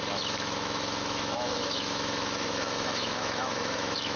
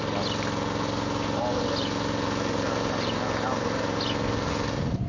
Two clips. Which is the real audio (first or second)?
second